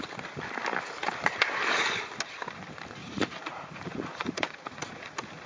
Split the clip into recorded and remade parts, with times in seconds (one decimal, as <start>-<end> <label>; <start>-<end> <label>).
0.0-3.0 recorded; 3.0-5.1 remade; 5.1-5.5 recorded